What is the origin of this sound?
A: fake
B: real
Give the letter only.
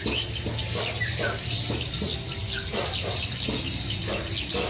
B